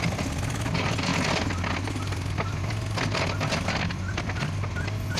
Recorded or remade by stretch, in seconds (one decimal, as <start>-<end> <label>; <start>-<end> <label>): 0.0-5.2 recorded